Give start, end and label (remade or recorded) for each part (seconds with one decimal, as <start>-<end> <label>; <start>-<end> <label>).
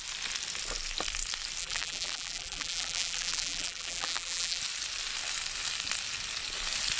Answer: 0.0-1.6 recorded; 1.6-4.6 remade; 4.6-7.0 recorded